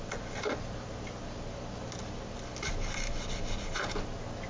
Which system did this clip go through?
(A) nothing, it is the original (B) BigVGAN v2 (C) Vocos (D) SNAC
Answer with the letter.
A